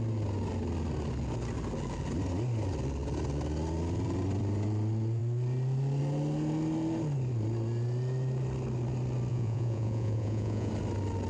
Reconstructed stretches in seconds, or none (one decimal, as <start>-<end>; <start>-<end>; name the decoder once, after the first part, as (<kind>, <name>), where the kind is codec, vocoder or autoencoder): 9.3-10.7 (vocoder, Vocos)